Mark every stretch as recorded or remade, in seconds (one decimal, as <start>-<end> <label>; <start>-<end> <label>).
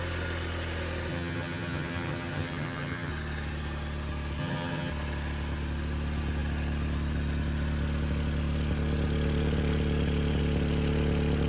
0.0-1.1 recorded; 1.1-3.1 remade; 3.1-4.4 recorded; 4.4-4.9 remade; 4.9-11.5 recorded